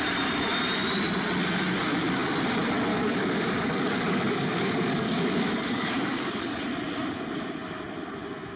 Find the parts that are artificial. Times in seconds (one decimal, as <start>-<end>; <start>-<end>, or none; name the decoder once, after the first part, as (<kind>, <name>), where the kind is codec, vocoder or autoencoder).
2.9-6.6 (codec, DAC)